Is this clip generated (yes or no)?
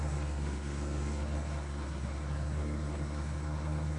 yes